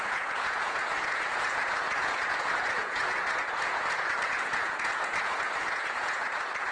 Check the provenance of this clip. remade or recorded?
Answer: remade